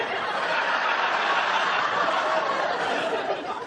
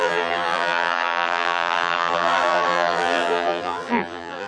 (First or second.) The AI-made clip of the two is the second